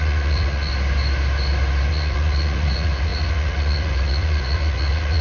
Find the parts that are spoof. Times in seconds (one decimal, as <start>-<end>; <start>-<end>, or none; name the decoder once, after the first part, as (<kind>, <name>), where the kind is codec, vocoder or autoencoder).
0.0-0.7 (vocoder, Vocos); 1.9-5.2